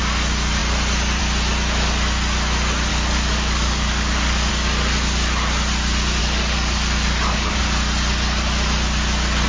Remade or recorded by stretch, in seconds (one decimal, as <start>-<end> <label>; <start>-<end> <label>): 0.0-2.9 recorded; 2.9-4.5 remade; 4.5-6.2 recorded; 6.2-7.6 remade; 7.6-9.5 recorded